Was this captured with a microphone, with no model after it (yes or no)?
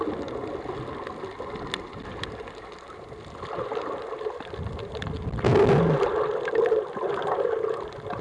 yes